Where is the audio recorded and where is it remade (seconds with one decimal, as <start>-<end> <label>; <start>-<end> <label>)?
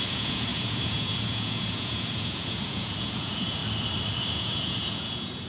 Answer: 0.0-3.6 remade; 3.6-4.3 recorded; 4.3-5.5 remade